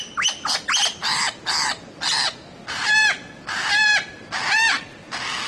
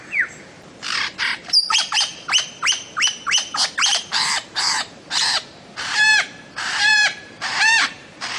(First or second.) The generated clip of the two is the second